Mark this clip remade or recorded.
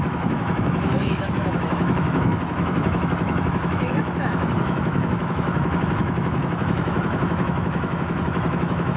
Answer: remade